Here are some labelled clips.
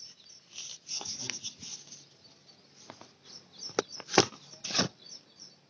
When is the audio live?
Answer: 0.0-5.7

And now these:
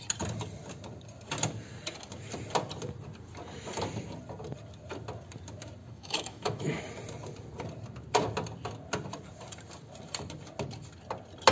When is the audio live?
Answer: 0.0-5.8; 6.8-11.5

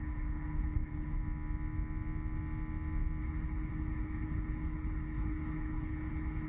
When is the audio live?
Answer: 1.2-3.2

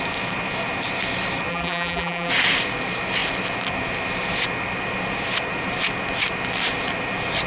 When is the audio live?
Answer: 0.0-1.5; 2.3-7.5

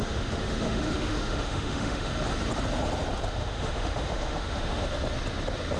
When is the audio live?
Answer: 2.1-3.3; 4.8-5.8

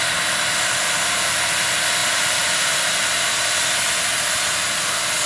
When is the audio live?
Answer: 0.0-2.0; 3.6-5.3

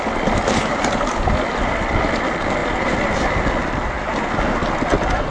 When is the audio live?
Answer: 0.0-5.3